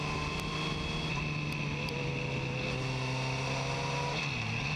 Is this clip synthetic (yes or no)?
no